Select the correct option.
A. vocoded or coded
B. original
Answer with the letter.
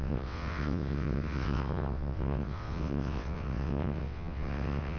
A